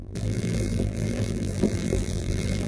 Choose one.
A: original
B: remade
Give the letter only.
B